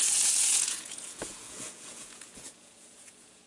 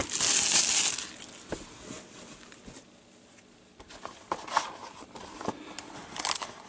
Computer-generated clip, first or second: first